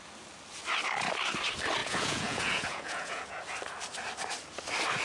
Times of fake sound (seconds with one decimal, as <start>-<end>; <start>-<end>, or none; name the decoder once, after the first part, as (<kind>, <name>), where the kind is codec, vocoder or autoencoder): 1.8-3.4 (vocoder, Vocos)